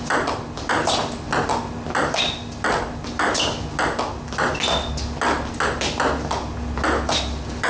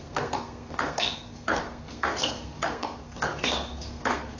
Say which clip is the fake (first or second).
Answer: second